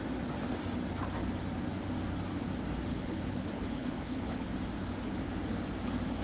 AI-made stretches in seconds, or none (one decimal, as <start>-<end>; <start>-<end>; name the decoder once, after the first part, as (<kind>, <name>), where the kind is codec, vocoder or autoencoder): 2.9-4.5 (codec, HILCodec)